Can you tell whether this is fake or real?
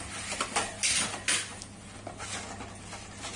real